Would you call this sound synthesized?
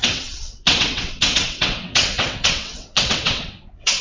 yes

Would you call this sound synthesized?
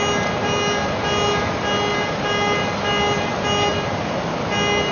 no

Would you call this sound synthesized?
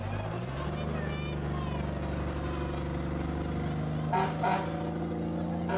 no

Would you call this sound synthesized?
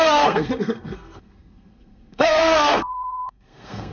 yes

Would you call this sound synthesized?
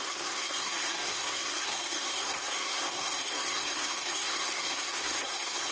yes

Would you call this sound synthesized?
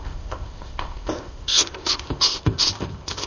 yes